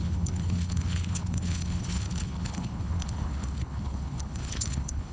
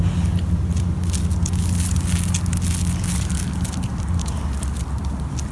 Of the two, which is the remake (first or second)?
first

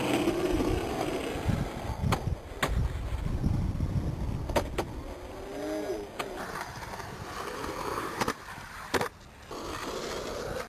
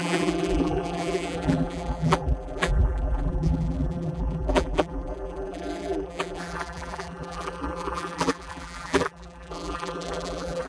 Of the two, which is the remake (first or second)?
second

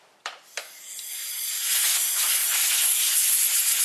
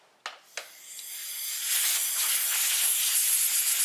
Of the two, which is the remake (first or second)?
first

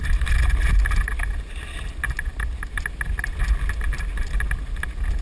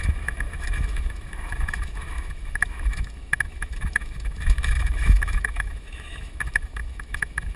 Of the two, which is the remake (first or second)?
second